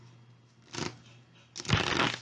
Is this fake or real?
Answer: real